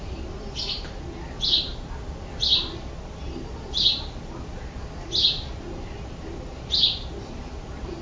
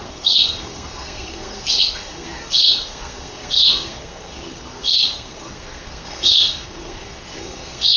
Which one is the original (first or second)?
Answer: first